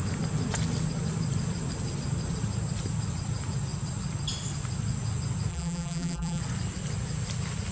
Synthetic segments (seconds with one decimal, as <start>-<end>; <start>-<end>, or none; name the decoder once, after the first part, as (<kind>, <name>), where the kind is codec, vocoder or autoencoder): 5.5-6.4 (vocoder, BigVGAN v2)